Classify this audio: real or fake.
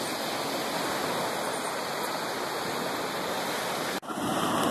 real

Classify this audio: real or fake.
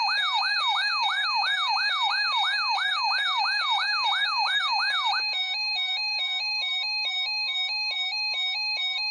fake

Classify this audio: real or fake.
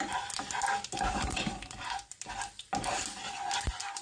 real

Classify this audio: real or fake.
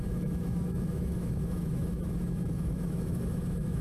fake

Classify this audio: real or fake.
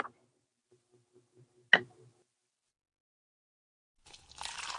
real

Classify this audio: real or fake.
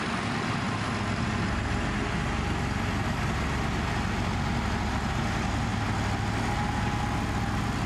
real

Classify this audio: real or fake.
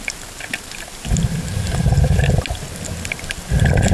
real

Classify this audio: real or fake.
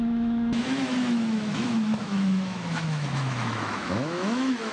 fake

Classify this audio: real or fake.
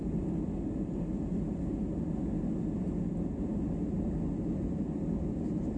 real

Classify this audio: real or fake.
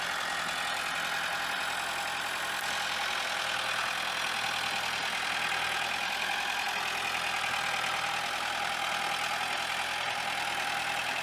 real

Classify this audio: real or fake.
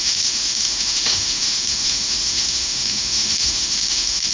fake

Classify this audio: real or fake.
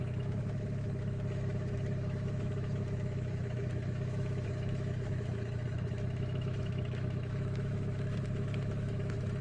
fake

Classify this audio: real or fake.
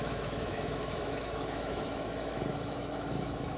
fake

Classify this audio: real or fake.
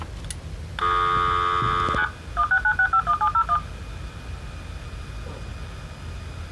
real